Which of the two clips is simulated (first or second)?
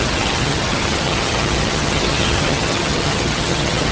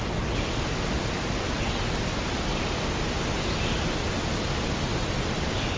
first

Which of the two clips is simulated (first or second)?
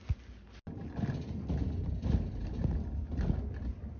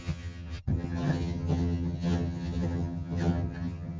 second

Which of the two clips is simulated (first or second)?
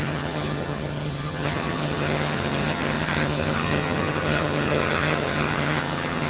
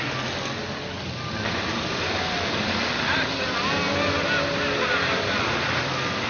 first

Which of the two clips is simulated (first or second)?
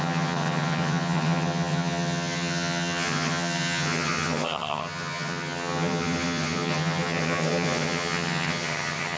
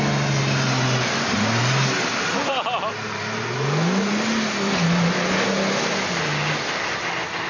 first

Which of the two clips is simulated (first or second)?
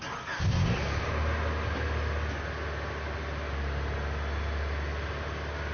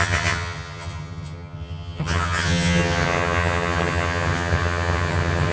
second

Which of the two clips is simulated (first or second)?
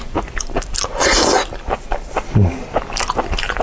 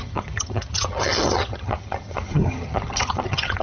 second